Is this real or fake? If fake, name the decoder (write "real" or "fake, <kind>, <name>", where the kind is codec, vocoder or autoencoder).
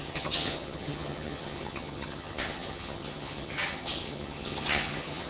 fake, vocoder, HiFi-GAN